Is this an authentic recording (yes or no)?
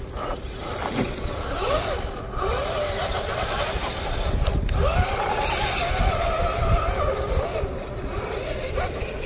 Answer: yes